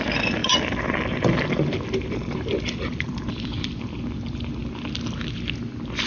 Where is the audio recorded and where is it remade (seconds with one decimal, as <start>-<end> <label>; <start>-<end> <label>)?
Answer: 0.0-0.4 recorded; 0.4-3.8 remade; 3.8-6.1 recorded

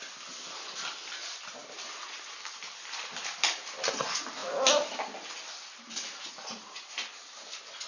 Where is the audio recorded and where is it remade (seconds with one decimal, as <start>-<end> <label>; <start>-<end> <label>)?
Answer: 0.0-7.9 recorded

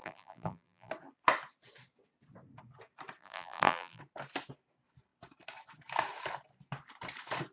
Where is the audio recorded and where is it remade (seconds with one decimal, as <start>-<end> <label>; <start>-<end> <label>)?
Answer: 0.0-0.9 remade; 0.9-3.2 recorded; 3.2-4.0 remade; 4.0-7.5 recorded

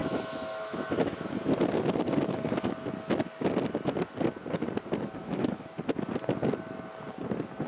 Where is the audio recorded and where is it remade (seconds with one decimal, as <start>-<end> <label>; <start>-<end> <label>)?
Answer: 0.0-1.3 remade; 1.3-5.2 recorded; 5.2-5.8 remade; 5.8-7.7 recorded